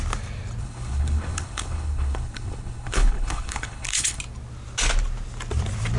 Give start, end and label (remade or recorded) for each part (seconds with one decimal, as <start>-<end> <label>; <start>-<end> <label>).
0.0-0.6 recorded; 0.6-4.2 remade; 4.2-6.0 recorded